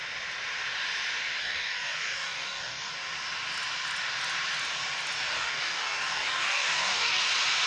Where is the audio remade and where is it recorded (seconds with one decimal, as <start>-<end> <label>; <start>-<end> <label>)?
0.0-1.4 recorded; 1.4-2.9 remade; 2.9-5.3 recorded; 5.3-7.2 remade; 7.2-7.7 recorded